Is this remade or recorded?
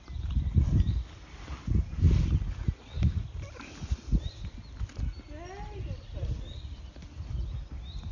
recorded